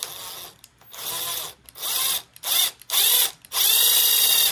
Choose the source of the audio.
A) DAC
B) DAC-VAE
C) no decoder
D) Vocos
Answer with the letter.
C